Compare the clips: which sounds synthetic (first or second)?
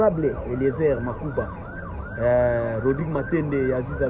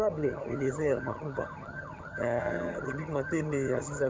second